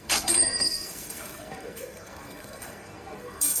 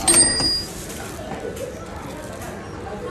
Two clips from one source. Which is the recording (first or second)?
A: second